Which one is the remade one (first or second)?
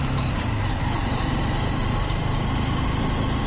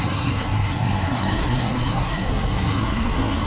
second